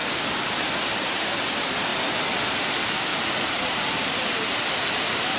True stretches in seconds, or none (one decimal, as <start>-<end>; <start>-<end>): 0.7-3.1

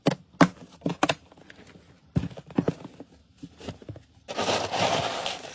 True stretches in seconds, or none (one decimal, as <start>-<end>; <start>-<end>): 0.0-0.7; 1.4-5.5

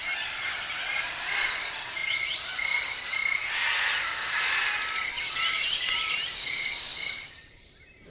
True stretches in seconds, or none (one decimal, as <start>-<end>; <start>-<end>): 2.0-5.1

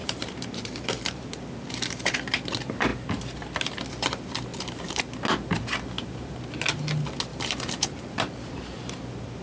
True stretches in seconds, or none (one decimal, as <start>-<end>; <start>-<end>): 1.3-4.5; 5.0-7.3; 9.0-9.4

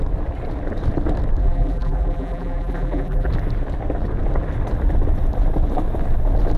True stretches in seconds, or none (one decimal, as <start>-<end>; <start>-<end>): 0.0-1.4; 3.3-6.6

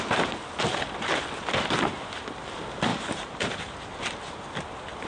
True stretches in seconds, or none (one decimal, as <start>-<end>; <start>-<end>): 0.0-2.9; 3.5-5.1

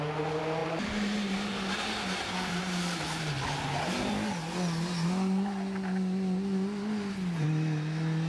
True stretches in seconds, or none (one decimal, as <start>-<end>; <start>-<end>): 0.0-0.6; 3.8-8.3